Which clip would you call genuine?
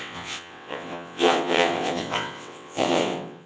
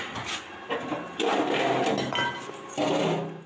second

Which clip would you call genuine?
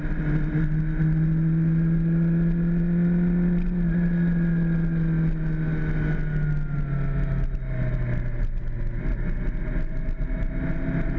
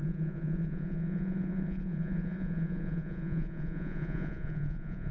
first